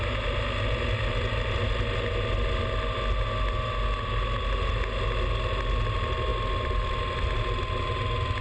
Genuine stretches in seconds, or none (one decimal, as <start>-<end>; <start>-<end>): 0.0-8.4